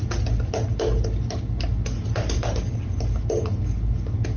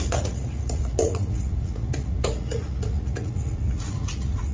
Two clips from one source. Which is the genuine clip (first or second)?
first